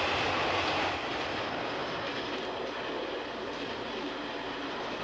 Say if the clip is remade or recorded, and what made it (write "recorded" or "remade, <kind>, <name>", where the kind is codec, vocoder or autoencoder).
recorded